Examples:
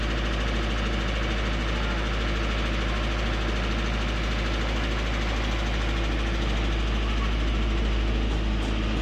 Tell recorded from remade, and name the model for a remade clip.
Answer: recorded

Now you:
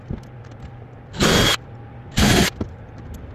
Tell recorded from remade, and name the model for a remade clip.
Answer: recorded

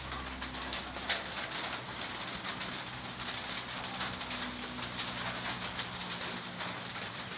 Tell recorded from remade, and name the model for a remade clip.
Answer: recorded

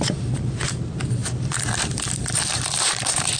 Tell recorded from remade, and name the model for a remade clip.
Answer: remade, vocoder, BigVGAN v2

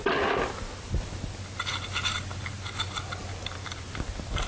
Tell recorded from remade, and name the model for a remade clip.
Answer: recorded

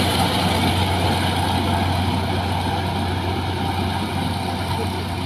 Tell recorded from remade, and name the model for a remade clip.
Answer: recorded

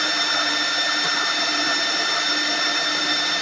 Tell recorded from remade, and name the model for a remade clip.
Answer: remade, vocoder, BigVGAN v2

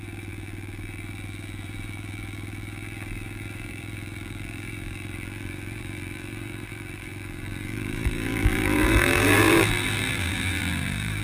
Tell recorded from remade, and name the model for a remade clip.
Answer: remade, vocoder, BigVGAN v2